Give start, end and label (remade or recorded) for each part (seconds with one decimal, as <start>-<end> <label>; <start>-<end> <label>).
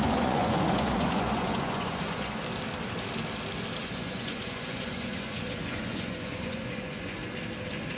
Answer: 0.0-2.4 remade; 2.4-3.8 recorded; 3.8-7.2 remade; 7.2-8.0 recorded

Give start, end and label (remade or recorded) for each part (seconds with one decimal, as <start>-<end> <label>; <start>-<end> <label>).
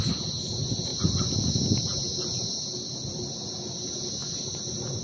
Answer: 0.0-5.0 recorded